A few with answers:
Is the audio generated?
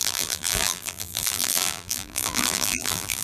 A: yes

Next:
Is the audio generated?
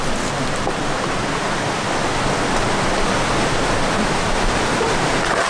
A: no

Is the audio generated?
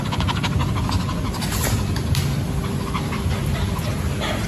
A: no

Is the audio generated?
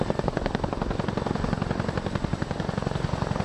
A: no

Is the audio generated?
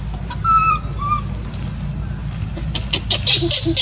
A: no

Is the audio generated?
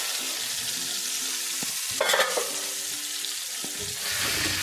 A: no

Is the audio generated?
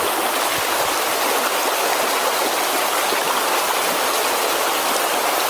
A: no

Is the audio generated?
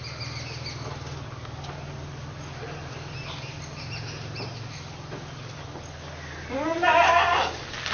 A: no